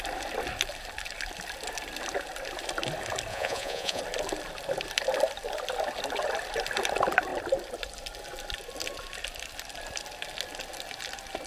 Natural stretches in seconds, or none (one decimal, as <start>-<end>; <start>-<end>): 0.0-3.3; 4.0-11.5